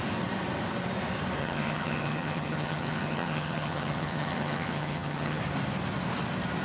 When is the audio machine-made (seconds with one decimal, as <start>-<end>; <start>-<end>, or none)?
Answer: 1.4-5.4